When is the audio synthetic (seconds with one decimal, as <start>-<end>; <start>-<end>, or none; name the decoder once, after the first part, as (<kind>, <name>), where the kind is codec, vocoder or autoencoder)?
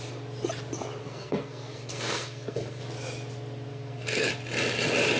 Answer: 1.0-2.8 (codec, SNAC); 3.7-4.3